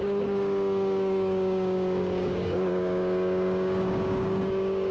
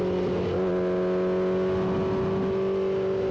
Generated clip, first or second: first